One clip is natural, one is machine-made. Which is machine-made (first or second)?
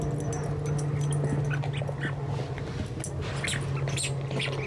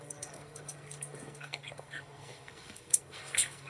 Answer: second